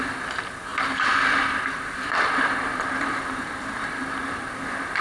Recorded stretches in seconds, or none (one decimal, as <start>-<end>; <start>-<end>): 0.0-5.0